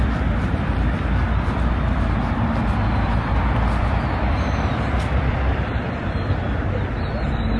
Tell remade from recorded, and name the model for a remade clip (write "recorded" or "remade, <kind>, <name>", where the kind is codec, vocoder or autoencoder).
remade, vocoder, BigVGAN v2